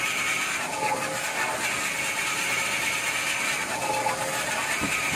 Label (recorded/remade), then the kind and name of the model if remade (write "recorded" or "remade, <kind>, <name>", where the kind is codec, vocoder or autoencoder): recorded